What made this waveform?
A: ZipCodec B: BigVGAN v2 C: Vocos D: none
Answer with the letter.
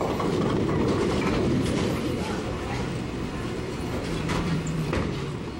B